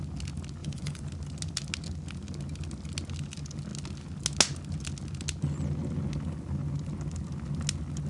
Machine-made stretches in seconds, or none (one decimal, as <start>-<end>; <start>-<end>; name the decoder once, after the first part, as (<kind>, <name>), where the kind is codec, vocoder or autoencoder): 0.6-1.1 (vocoder, Vocos)